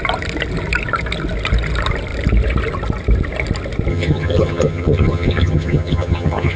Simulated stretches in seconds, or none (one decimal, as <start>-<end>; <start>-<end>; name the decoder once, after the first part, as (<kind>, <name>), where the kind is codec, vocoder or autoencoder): 3.9-6.6 (vocoder, HiFi-GAN)